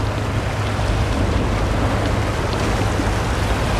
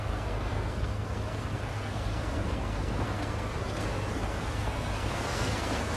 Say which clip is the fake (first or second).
second